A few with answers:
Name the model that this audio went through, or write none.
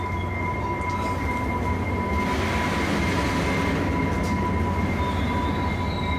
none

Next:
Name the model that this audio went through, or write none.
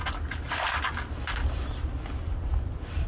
none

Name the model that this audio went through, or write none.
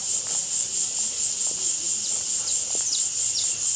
none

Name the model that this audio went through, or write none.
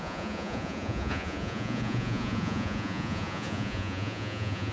vocoder, Vocos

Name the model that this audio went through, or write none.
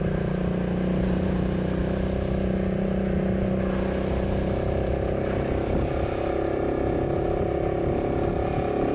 none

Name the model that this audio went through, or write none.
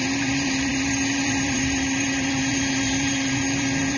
vocoder, BigVGAN v2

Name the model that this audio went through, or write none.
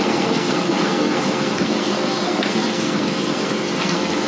codec, SNAC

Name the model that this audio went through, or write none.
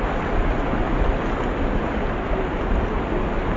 none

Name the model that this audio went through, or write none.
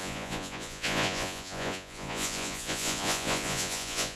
vocoder, Vocos